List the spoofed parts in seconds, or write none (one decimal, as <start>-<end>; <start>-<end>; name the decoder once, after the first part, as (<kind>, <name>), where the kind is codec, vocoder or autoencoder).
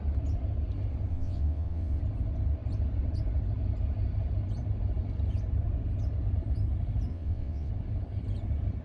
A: 1.1-2.0 (vocoder, WaveNeXt); 7.1-7.7